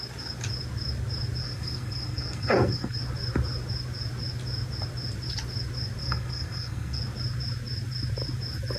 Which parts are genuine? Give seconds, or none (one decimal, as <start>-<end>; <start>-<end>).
0.0-1.4; 3.0-6.0; 7.0-8.8